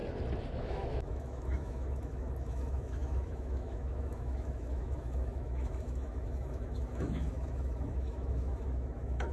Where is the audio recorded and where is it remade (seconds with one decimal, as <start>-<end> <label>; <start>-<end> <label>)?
0.0-0.6 recorded; 0.6-9.3 remade